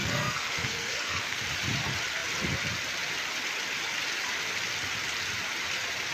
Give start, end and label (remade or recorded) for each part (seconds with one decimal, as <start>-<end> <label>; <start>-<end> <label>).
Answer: 0.0-1.4 remade; 1.4-6.1 recorded